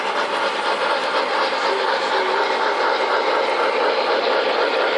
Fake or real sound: real